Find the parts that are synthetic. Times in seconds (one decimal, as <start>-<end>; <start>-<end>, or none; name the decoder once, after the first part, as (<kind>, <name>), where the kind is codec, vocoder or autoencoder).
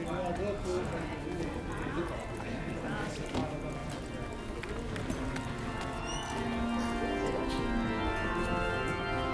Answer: none